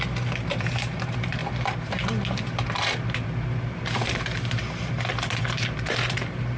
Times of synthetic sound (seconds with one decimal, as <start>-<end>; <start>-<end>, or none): none